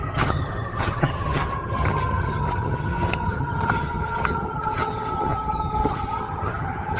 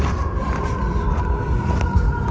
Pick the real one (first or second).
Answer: second